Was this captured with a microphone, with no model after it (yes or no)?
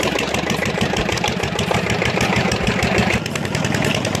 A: no